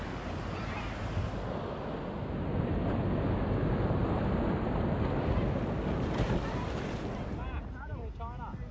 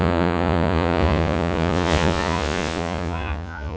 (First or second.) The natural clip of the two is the first